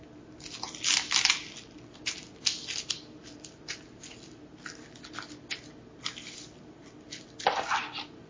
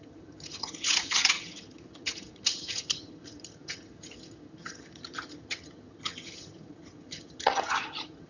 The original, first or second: first